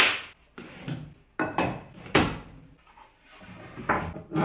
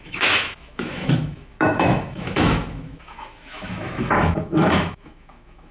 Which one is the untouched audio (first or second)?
first